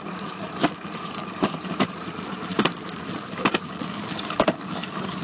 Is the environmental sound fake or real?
fake